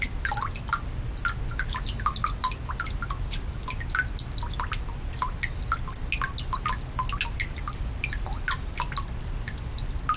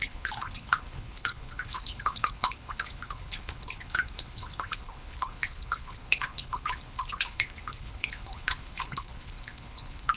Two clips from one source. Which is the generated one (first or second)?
second